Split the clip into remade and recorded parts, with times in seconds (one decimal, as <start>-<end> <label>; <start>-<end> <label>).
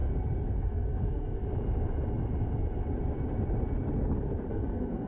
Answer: 0.0-0.6 recorded; 0.6-1.4 remade; 1.4-4.5 recorded; 4.5-5.1 remade